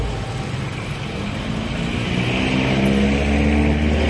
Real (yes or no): yes